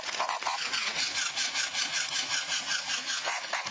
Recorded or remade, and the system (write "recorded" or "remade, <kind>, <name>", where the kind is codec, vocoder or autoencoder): remade, vocoder, Vocos